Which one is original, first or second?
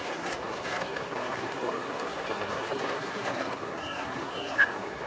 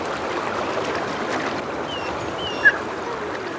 second